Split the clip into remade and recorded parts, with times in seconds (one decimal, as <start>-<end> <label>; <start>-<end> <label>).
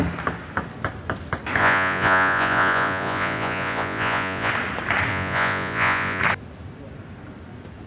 0.0-1.6 recorded; 1.6-4.5 remade; 4.5-5.1 recorded; 5.1-6.2 remade; 6.2-7.9 recorded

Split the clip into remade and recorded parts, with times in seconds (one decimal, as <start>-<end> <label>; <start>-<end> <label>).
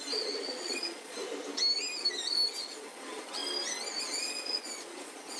0.0-1.2 remade; 1.2-2.6 recorded; 2.6-3.4 remade; 3.4-4.0 recorded; 4.0-5.4 remade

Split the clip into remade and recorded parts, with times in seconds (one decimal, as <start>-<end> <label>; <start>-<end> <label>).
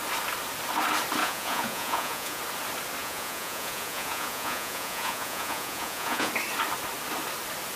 0.0-1.2 recorded; 1.2-2.4 remade; 2.4-3.0 recorded; 3.0-6.3 remade; 6.3-7.8 recorded